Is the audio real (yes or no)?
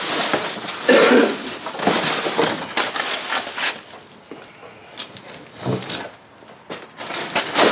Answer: yes